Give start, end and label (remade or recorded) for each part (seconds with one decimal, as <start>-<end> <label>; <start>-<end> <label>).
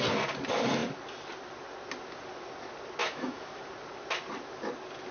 0.0-3.0 recorded; 3.0-3.6 remade; 3.6-5.1 recorded